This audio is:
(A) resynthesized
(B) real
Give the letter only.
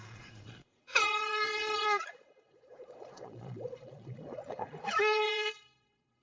A